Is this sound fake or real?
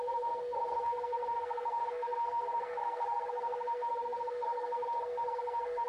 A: fake